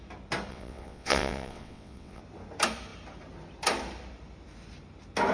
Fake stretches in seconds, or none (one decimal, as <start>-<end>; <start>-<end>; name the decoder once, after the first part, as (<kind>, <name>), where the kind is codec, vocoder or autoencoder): 0.5-2.2 (vocoder, WaveNeXt)